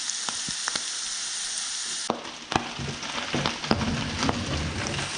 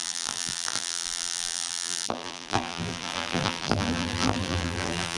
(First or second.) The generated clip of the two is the second